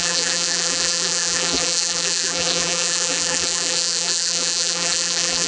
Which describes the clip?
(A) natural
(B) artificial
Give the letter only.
B